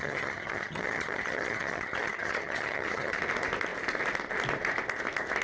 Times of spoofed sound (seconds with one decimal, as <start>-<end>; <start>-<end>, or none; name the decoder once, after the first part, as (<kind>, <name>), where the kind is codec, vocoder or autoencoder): 0.0-3.2 (vocoder, HiFi-GAN)